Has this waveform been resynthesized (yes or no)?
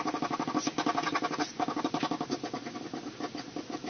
no